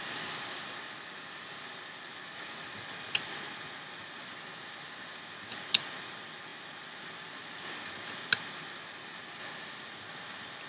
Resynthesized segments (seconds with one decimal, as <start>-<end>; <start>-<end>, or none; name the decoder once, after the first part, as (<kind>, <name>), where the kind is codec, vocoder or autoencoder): none